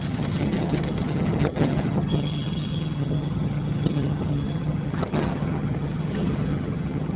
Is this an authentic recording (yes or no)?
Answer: no